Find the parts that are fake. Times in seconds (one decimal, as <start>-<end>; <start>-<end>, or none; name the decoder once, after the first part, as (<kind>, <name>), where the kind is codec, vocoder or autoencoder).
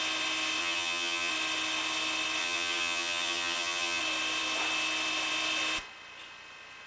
0.6-1.3 (vocoder, HiFi-GAN); 2.4-4.0